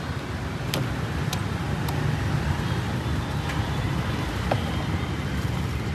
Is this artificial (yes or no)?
no